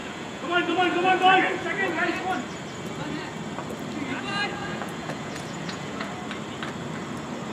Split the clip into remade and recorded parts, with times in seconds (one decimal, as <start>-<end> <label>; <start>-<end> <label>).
0.0-2.2 remade; 2.2-4.1 recorded; 4.1-6.1 remade; 6.1-7.5 recorded